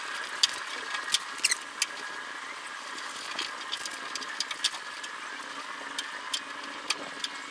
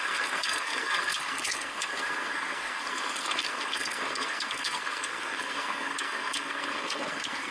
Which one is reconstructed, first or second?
second